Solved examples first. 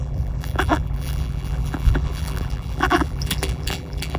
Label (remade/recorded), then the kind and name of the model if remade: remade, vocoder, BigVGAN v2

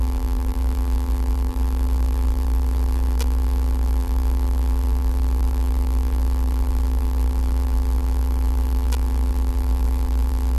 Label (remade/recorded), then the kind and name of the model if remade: remade, vocoder, BigVGAN v2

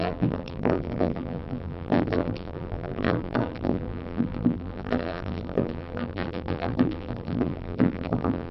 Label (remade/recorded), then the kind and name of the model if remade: remade, vocoder, BigVGAN v2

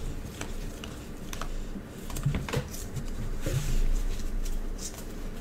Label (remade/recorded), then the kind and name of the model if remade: remade, vocoder, BigVGAN v2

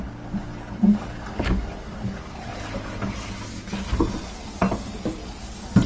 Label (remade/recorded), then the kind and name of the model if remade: recorded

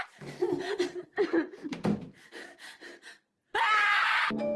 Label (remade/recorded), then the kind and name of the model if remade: recorded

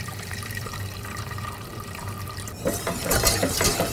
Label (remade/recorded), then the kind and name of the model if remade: remade, vocoder, BigVGAN v2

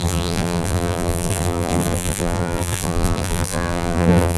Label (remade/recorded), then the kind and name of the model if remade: remade, vocoder, BigVGAN v2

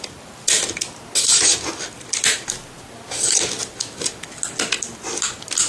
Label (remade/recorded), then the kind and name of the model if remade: recorded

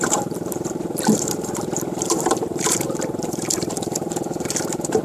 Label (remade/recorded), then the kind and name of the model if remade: remade, vocoder, BigVGAN v2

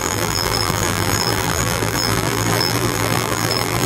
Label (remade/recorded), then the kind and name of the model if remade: remade, vocoder, BigVGAN v2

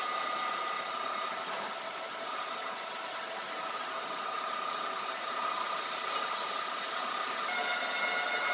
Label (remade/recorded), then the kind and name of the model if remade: recorded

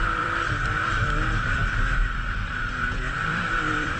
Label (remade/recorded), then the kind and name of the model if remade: remade, vocoder, BigVGAN v2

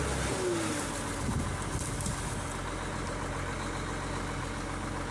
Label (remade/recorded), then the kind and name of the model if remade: recorded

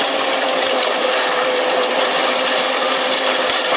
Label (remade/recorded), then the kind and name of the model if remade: remade, vocoder, BigVGAN v2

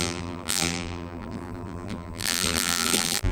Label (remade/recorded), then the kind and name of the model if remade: remade, vocoder, BigVGAN v2